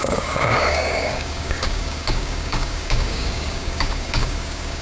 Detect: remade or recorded remade